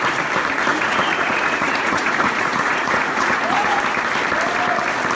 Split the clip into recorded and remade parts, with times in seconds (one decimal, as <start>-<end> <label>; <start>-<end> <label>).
0.0-0.7 recorded; 0.7-3.8 remade; 3.8-5.1 recorded